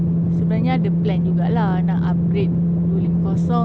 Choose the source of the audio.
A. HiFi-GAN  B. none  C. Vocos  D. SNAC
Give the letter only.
B